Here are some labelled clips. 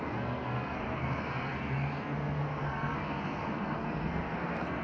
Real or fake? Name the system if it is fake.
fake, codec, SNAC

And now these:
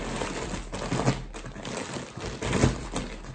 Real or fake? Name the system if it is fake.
real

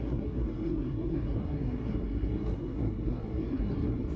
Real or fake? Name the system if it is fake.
fake, codec, SNAC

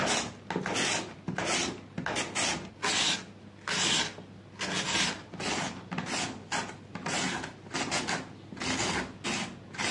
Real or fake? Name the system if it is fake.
real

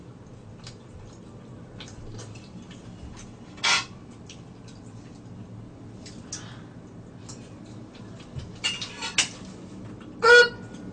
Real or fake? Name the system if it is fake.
real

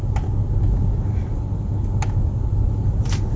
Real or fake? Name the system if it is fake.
real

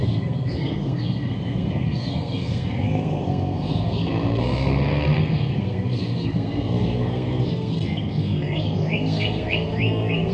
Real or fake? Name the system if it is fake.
fake, codec, SNAC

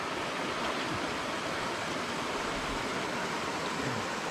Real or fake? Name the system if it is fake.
real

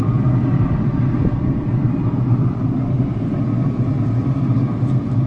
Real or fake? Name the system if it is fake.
real